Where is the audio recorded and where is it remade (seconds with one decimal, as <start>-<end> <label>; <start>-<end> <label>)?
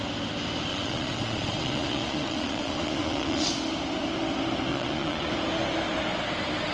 0.0-0.7 recorded; 0.7-3.5 remade; 3.5-4.7 recorded; 4.7-5.3 remade; 5.3-6.7 recorded